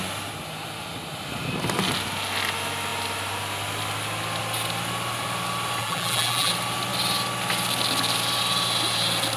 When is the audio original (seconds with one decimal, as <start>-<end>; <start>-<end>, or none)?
0.0-5.8; 6.5-9.4